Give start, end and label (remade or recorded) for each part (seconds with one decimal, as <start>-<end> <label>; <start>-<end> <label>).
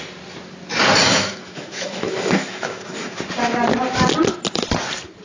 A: 0.0-1.1 recorded; 1.1-3.2 remade; 3.2-5.2 recorded